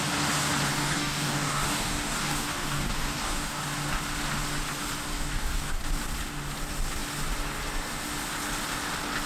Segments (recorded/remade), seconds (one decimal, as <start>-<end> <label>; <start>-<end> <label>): 0.0-0.7 recorded; 0.7-3.6 remade; 3.6-5.1 recorded; 5.1-5.8 remade; 5.8-9.3 recorded